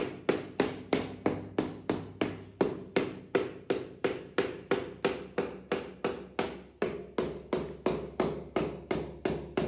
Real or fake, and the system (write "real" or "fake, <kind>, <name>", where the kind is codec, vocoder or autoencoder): real